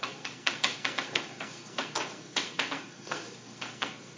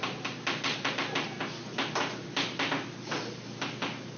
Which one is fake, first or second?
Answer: first